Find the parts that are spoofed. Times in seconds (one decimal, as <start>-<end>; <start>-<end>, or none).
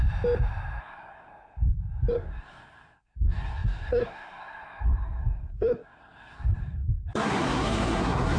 0.8-1.3; 2.1-8.4